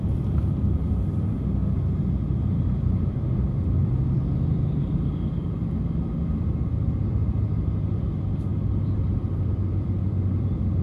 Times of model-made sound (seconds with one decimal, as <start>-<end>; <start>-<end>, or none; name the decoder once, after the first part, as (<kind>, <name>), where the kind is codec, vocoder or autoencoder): 0.0-1.6 (vocoder, BigVGAN v2); 2.4-8.5; 9.3-10.8